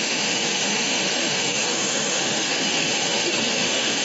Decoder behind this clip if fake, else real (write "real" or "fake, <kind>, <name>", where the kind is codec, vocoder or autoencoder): fake, autoencoder, DAC-VAE